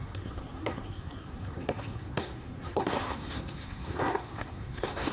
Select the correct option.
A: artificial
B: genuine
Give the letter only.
A